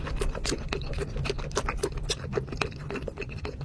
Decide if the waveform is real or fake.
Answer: real